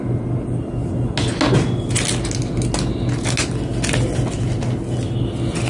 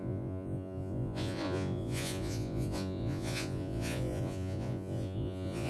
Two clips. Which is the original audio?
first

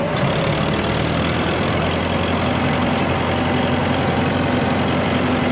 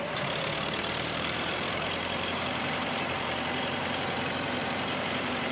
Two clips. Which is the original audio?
first